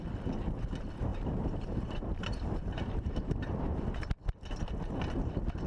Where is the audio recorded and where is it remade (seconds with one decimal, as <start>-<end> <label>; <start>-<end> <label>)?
0.0-1.1 recorded; 1.1-3.8 remade; 3.8-5.7 recorded